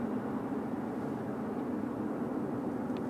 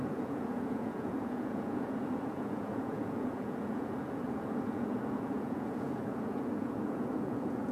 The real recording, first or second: first